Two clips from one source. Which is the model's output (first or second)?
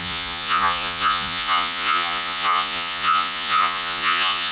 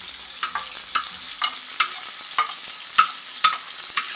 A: first